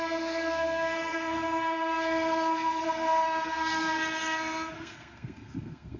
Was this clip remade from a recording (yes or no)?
yes